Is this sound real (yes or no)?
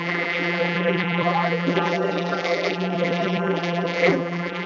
no